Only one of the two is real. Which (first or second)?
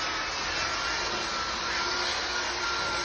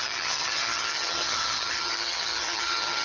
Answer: first